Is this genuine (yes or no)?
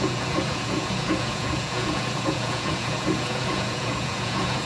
no